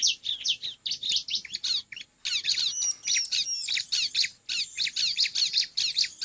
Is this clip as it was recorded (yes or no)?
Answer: yes